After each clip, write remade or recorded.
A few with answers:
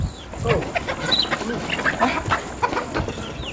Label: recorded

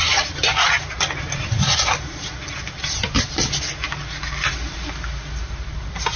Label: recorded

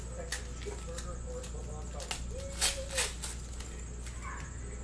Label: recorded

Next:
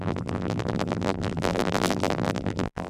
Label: remade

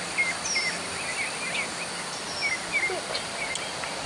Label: recorded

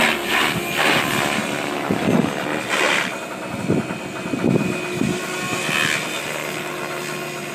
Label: recorded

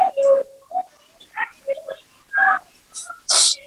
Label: remade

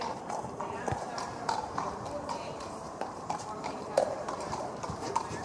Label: remade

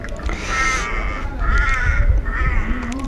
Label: recorded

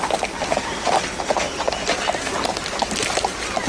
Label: recorded